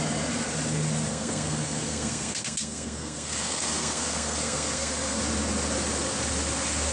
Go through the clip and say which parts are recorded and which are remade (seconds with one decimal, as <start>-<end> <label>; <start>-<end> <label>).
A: 0.0-1.1 recorded; 1.1-5.2 remade; 5.2-6.9 recorded